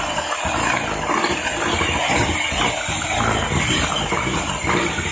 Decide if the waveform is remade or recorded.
recorded